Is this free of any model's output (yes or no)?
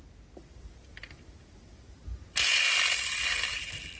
yes